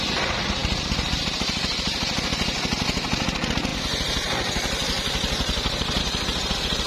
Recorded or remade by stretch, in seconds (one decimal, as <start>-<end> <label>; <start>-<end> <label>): 0.0-6.9 recorded

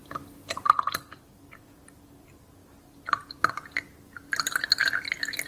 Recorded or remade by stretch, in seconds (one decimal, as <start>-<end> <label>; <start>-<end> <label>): 0.0-2.0 remade; 2.0-2.6 recorded; 2.6-4.6 remade; 4.6-5.5 recorded